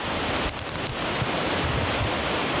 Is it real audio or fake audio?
real